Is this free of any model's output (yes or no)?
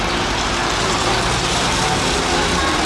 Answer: no